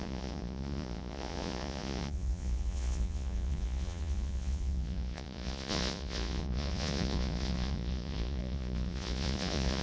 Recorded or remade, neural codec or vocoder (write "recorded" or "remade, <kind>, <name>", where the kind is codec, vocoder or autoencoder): remade, vocoder, Vocos